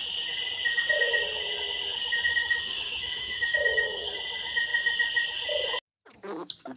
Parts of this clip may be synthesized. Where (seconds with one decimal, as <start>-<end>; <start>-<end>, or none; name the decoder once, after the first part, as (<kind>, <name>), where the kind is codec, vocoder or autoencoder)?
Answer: 2.4-4.1 (autoencoder, DAC-VAE)